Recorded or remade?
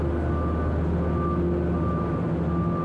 recorded